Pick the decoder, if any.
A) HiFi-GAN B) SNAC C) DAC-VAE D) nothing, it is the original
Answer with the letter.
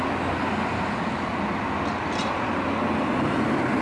D